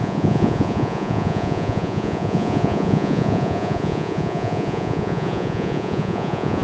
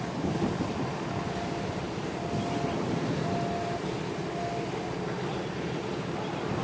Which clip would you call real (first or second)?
second